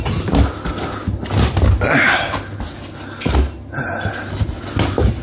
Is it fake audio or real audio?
real